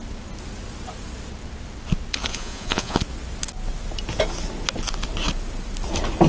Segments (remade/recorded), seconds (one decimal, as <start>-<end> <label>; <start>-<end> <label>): 0.0-2.3 recorded; 2.3-3.0 remade; 3.0-6.3 recorded